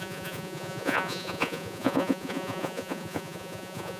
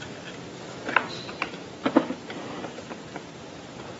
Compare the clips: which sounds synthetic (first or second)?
first